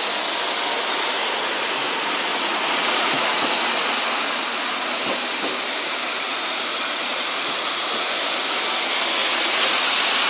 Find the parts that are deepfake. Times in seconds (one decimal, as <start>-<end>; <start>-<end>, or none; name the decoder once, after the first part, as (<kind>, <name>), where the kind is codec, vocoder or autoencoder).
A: 1.2-5.0 (vocoder, Vocos); 6.3-7.9; 9.2-10.3